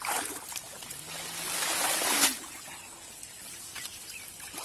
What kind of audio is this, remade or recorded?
recorded